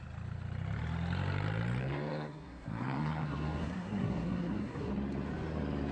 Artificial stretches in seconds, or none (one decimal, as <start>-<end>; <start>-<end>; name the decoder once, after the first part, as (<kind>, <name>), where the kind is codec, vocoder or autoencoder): 1.8-4.9 (codec, SNAC)